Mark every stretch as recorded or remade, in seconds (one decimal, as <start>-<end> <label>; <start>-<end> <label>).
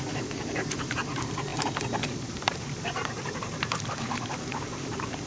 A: 0.0-5.3 remade